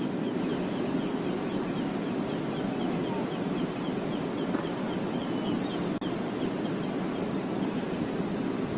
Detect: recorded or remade recorded